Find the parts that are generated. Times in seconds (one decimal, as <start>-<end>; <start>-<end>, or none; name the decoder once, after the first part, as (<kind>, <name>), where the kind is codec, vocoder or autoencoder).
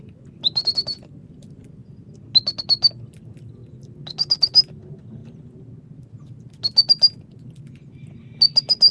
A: none